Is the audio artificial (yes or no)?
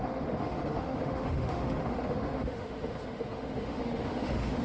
yes